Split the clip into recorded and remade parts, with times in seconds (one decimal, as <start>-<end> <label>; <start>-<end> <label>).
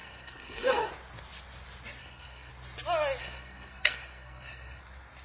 0.0-0.9 remade; 0.9-2.0 recorded; 2.0-2.5 remade; 2.5-3.2 recorded; 3.2-4.8 remade; 4.8-5.2 recorded